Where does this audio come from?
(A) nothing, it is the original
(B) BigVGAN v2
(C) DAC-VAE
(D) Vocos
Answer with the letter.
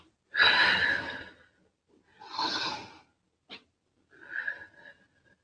A